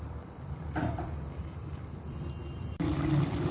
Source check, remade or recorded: remade